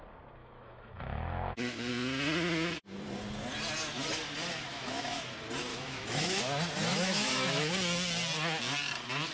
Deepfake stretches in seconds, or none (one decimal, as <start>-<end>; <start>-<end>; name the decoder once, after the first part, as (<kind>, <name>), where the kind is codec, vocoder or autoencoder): 0.4-1.9 (autoencoder, DAC-VAE); 4.7-5.2; 5.7-6.4; 6.9-7.7